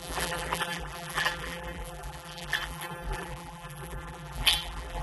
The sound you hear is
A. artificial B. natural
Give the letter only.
A